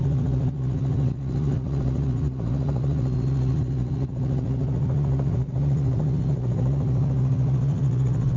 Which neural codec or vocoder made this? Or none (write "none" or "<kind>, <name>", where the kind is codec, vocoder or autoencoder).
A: vocoder, Vocos